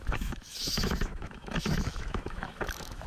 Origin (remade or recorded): remade